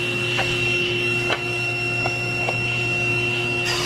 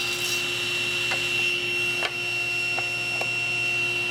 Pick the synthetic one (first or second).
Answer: first